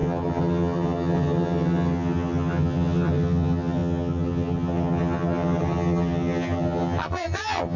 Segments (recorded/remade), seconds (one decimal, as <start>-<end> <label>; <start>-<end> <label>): 0.0-7.8 remade